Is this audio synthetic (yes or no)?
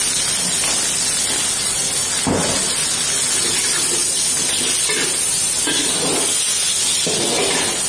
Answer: no